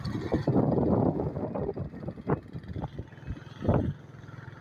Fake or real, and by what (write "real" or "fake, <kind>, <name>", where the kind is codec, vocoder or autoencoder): real